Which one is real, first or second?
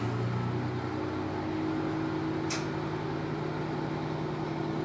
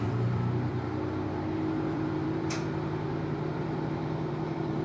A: first